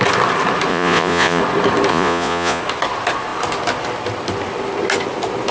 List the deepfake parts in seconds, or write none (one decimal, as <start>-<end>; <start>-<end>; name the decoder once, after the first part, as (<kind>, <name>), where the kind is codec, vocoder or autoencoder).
0.7-1.4 (vocoder, Vocos); 1.9-2.6